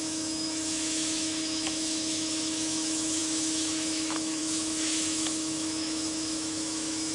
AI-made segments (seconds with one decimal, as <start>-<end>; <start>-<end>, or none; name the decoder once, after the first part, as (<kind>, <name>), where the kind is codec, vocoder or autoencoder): 0.0-7.1 (autoencoder, DAC-VAE)